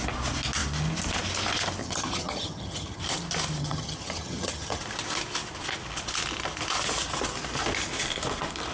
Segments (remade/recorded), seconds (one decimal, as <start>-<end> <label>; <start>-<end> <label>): 0.0-1.8 recorded; 1.8-3.0 remade; 3.0-3.6 recorded; 3.6-4.8 remade; 4.8-8.7 recorded